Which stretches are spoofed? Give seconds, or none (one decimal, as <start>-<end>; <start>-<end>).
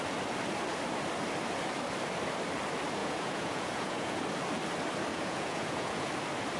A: 3.0-4.2; 5.1-6.1